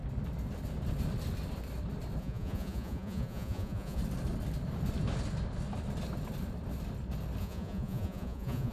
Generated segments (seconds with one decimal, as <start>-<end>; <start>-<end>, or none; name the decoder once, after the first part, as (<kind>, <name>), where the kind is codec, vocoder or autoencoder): 2.2-4.0 (vocoder, Vocos); 7.4-8.7